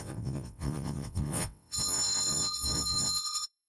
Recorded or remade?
remade